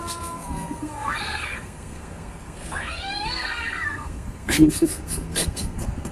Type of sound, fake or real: fake